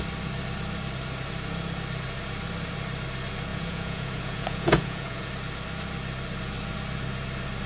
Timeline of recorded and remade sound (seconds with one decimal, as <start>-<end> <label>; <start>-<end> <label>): 0.0-3.5 recorded; 3.5-5.3 remade; 5.3-7.7 recorded